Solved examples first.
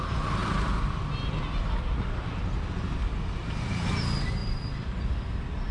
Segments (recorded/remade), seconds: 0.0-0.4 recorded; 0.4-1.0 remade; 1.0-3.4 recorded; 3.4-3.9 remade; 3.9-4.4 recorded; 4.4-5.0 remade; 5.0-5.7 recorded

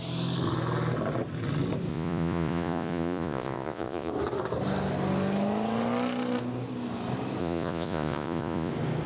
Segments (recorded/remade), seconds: 0.0-1.9 recorded; 1.9-4.1 remade; 4.1-7.4 recorded; 7.4-8.7 remade; 8.7-9.1 recorded

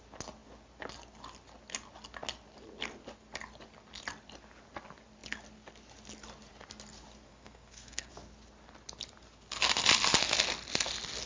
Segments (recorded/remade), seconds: 0.0-7.3 recorded; 7.3-8.1 remade; 8.1-11.3 recorded